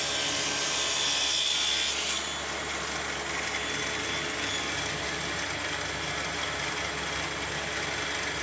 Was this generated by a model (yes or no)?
no